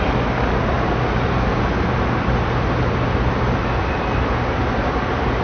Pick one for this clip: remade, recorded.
recorded